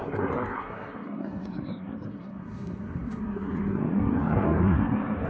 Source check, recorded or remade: remade